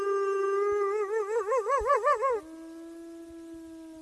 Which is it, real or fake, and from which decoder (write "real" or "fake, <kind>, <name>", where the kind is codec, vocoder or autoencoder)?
real